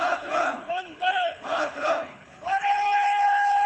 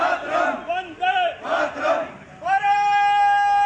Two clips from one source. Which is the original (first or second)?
second